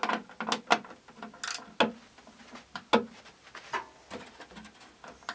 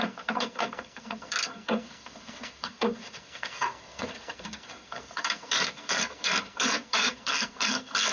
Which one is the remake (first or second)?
second